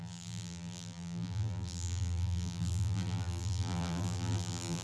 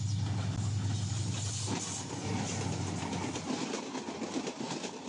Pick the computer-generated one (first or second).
first